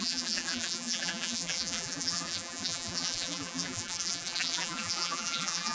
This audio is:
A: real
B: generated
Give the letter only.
B